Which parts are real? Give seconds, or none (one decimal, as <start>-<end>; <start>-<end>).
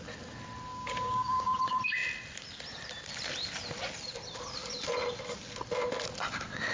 0.0-0.7; 1.6-6.7